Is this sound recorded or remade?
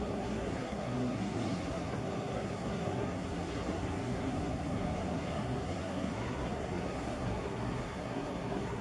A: remade